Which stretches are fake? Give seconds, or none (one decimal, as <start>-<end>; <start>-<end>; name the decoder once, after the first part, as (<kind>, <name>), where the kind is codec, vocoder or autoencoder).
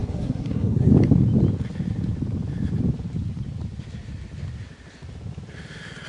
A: 0.0-0.9 (codec, SNAC)